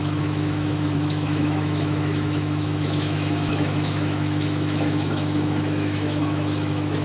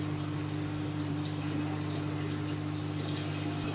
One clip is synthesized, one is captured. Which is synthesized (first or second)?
first